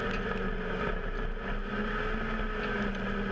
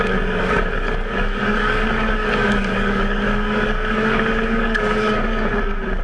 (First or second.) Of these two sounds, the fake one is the second